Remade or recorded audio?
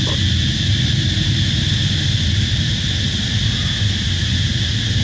recorded